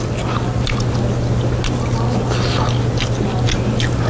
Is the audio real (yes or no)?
yes